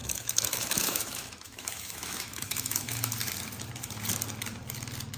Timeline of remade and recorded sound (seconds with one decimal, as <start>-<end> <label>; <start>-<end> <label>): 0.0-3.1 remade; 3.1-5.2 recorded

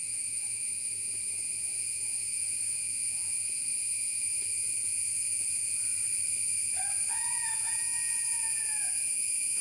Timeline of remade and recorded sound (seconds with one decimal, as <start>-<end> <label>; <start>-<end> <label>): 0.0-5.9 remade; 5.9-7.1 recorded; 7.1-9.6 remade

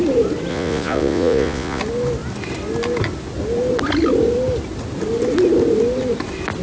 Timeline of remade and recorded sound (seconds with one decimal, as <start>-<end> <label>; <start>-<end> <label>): 0.0-0.5 recorded; 0.5-1.8 remade; 1.8-6.6 recorded